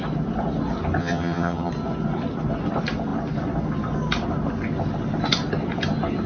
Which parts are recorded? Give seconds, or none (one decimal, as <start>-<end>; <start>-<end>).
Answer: 0.0-1.0; 1.7-6.3